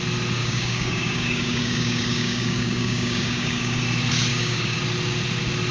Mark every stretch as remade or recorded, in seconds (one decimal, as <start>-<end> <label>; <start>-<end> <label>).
0.0-0.4 recorded; 0.4-3.8 remade; 3.8-4.3 recorded; 4.3-4.8 remade; 4.8-5.7 recorded